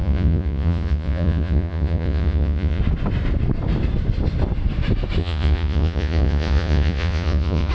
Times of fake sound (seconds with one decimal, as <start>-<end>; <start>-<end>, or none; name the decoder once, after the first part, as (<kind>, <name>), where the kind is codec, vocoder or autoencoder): 0.0-2.8 (vocoder, Vocos); 5.2-7.7